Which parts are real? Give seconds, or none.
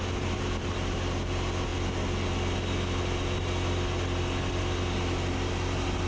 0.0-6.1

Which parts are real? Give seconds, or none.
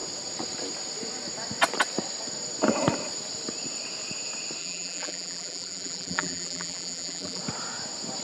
0.0-4.6; 7.4-8.2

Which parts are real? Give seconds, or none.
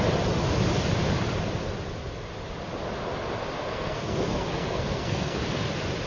0.0-3.6; 5.4-6.1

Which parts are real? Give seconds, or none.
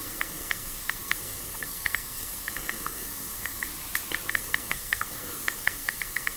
3.7-4.3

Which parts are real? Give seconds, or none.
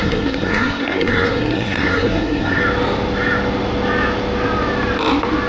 2.6-5.5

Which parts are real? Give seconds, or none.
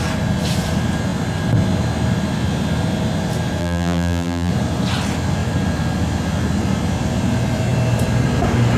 0.0-3.6; 4.5-8.8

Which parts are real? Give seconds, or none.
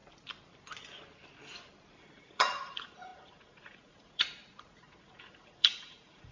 0.0-2.2